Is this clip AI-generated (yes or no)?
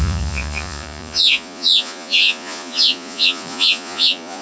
yes